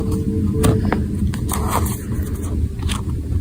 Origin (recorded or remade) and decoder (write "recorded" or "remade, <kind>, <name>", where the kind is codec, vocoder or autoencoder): recorded